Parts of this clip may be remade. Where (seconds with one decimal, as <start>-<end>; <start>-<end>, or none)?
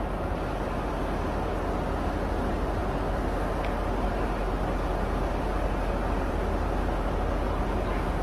none